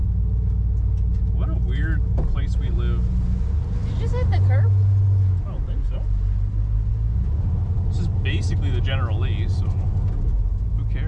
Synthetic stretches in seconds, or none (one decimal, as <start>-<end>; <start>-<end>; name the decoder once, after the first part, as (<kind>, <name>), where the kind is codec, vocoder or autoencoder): none